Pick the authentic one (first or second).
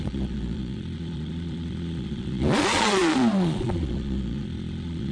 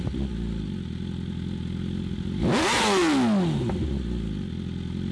second